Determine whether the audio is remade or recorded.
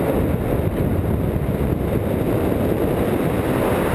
recorded